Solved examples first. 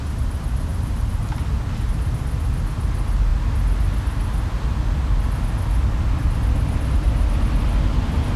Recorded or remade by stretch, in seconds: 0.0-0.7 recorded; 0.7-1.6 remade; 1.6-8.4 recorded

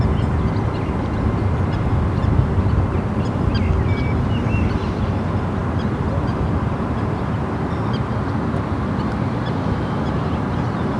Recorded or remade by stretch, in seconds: 0.0-11.0 recorded

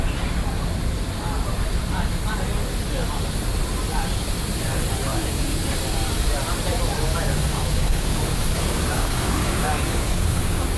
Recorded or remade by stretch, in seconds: 0.0-5.1 recorded; 5.1-5.7 remade; 5.7-7.1 recorded; 7.1-10.8 remade

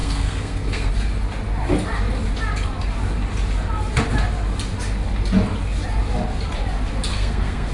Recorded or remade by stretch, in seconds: 0.0-0.9 remade; 0.9-7.1 recorded; 7.1-7.7 remade

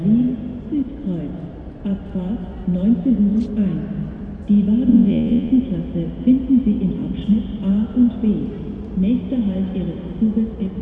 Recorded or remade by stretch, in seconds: 0.0-4.9 recorded; 4.9-5.5 remade; 5.5-10.8 recorded

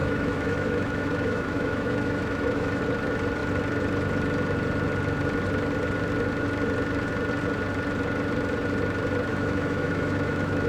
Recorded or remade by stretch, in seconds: 0.0-2.8 remade; 2.8-9.3 recorded; 9.3-10.7 remade